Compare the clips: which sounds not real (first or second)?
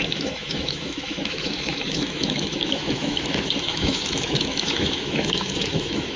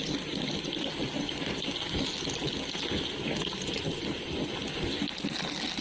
first